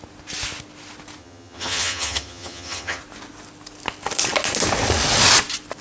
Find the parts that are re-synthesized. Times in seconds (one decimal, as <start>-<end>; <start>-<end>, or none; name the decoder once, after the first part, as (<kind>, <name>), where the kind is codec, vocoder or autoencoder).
1.2-3.0 (vocoder, HiFi-GAN)